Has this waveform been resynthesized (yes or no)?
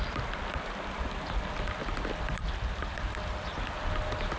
no